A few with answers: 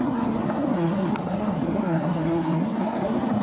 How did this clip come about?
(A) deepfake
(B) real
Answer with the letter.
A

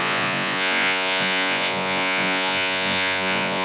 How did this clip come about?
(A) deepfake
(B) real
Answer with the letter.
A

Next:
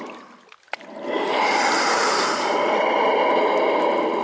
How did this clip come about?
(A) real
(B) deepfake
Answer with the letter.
A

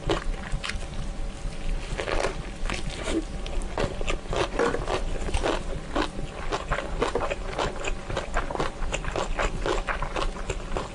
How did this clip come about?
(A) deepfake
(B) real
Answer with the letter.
B